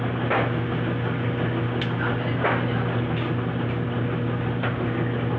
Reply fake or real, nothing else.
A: real